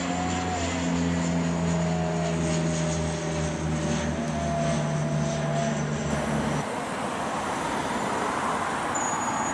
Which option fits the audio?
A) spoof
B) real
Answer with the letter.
B